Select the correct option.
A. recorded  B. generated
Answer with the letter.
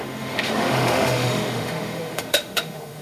B